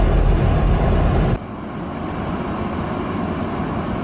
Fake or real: real